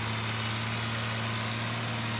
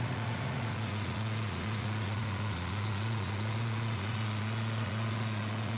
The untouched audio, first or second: first